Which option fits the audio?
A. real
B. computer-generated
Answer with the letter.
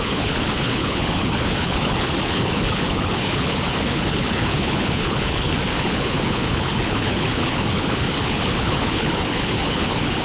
B